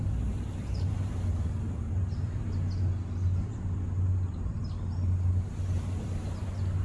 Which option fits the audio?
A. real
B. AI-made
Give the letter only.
A